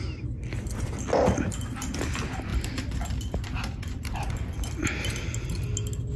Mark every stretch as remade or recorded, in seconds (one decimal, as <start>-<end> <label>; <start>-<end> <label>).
0.0-2.5 recorded; 2.5-4.7 remade; 4.7-6.2 recorded